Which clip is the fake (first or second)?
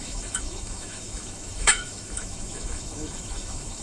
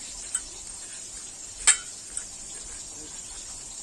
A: first